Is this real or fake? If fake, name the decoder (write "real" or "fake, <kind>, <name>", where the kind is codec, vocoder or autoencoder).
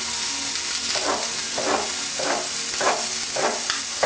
real